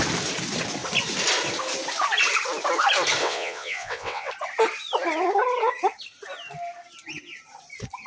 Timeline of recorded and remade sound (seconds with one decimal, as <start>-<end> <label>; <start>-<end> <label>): 0.0-3.2 recorded; 3.2-4.3 remade; 4.3-8.1 recorded